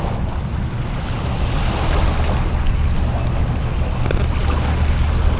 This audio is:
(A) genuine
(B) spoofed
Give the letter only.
A